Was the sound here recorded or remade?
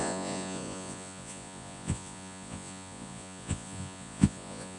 remade